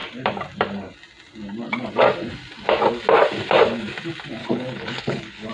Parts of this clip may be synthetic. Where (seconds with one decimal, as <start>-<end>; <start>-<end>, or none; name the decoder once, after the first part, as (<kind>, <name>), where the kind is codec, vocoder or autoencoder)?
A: 4.4-5.5 (codec, HILCodec)